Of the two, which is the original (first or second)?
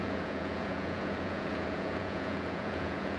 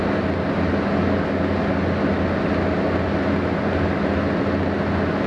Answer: second